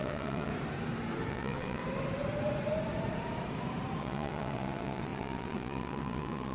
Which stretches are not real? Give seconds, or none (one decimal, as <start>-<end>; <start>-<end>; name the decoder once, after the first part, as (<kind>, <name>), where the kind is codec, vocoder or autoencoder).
0.0-0.5 (vocoder, WaveNeXt); 1.3-1.8; 4.0-6.5